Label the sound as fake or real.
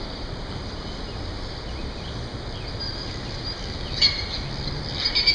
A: real